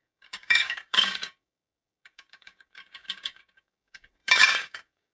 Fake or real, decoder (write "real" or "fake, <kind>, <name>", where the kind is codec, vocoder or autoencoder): fake, codec, DAC